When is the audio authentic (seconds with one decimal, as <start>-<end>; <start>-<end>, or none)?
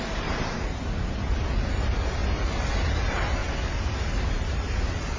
2.2-2.7; 3.4-4.3